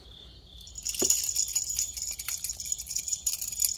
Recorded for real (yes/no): yes